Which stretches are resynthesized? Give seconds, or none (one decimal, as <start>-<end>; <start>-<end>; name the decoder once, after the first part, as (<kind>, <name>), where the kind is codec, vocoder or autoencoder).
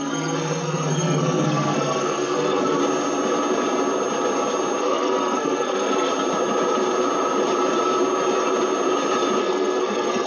0.0-2.8 (codec, SNAC); 4.8-6.1; 9.4-10.3